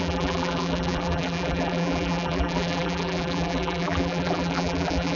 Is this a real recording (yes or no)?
no